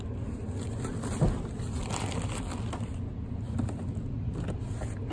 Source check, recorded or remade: recorded